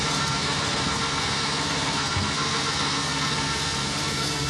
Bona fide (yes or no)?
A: no